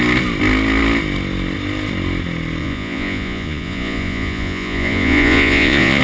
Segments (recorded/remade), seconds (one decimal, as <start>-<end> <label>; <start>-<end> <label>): 0.0-2.6 recorded; 2.6-6.0 remade